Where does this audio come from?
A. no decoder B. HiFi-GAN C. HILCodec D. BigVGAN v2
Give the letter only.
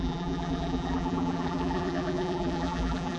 D